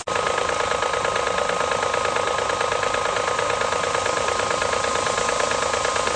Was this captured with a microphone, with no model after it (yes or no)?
yes